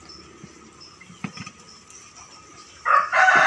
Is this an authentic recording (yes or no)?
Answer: yes